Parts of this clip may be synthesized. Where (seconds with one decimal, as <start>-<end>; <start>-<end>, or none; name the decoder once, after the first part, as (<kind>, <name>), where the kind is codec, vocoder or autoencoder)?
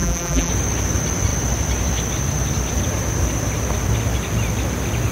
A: 0.0-0.5 (vocoder, BigVGAN v2)